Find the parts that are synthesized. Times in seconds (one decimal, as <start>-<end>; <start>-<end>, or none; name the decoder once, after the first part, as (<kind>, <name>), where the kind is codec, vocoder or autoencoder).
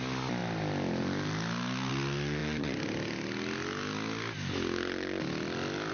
none